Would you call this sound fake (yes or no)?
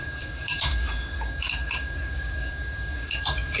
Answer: yes